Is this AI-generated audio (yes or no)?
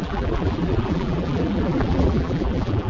yes